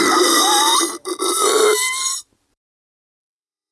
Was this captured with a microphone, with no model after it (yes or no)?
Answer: no